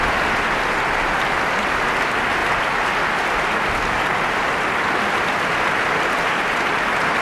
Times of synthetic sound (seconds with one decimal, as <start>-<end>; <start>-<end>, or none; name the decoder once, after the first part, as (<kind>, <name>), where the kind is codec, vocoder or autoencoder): none